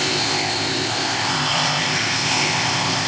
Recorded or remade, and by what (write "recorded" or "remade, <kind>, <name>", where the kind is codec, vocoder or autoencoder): remade, codec, ZipCodec